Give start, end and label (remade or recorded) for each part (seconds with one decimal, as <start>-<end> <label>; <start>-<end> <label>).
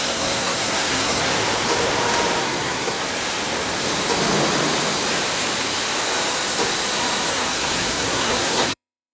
0.0-1.2 remade; 1.2-2.4 recorded; 2.4-3.0 remade; 3.0-7.3 recorded; 7.3-9.1 remade